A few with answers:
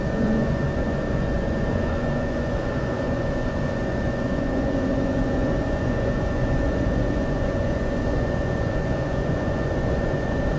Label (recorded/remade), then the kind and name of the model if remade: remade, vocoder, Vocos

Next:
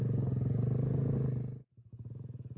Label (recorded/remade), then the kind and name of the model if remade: recorded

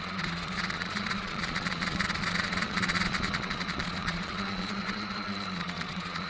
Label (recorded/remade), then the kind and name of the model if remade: remade, vocoder, Vocos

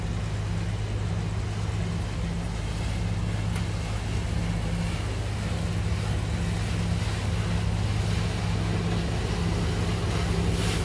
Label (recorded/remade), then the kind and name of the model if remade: recorded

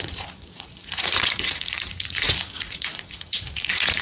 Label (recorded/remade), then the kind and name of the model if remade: remade, vocoder, Vocos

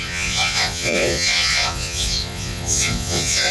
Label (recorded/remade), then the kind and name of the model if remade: remade, vocoder, Vocos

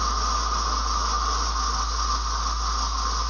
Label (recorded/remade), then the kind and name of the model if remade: recorded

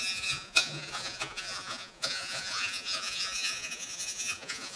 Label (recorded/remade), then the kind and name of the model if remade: remade, vocoder, Vocos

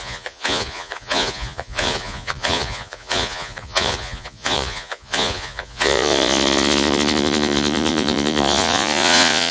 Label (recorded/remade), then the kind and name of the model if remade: remade, vocoder, Vocos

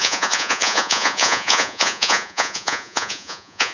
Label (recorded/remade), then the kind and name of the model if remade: remade, vocoder, Vocos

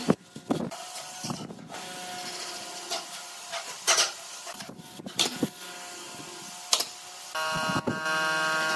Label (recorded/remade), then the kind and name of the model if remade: recorded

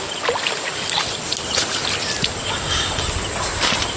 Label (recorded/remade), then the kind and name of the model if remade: recorded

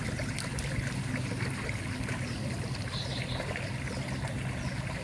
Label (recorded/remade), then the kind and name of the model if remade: recorded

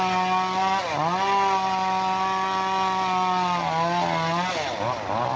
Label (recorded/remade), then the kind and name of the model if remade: recorded